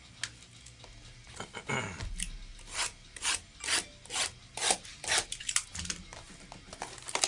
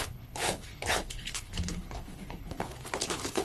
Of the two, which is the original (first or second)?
first